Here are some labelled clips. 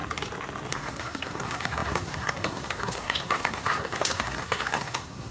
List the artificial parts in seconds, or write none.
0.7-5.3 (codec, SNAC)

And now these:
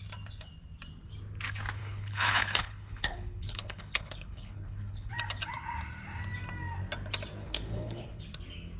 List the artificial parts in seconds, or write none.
1.8-5.1 (codec, HILCodec); 7.4-8.2

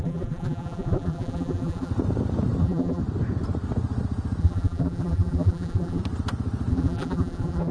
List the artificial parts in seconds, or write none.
0.0-1.9 (vocoder, BigVGAN v2); 2.6-3.0; 4.4-6.0; 6.7-7.7